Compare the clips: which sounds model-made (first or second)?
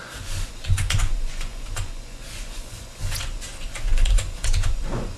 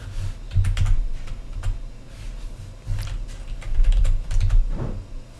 first